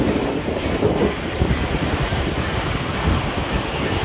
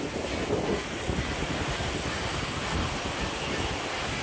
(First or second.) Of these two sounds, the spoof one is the first